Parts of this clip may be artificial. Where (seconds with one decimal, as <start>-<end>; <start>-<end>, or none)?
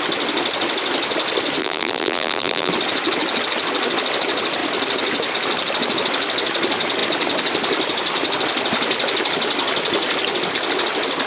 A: 1.6-2.7